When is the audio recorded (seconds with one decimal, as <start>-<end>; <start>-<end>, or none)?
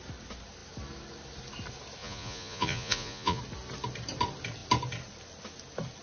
0.0-2.0; 3.4-6.0